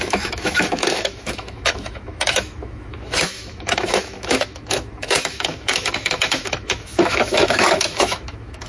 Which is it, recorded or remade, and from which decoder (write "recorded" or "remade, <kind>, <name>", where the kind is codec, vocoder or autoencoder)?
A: remade, autoencoder, DAC-VAE